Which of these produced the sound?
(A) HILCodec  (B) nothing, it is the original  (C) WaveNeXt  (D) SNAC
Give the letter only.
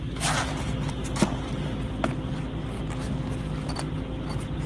B